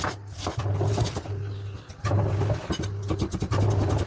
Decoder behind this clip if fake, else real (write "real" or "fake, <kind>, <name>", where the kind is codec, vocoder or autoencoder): real